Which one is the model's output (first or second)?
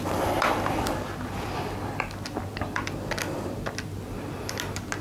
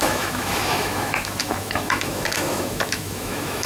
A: second